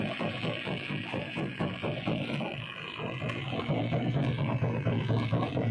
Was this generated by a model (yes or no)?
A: yes